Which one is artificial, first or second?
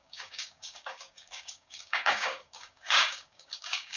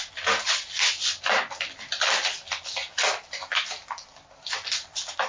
first